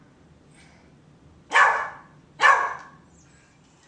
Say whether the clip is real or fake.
real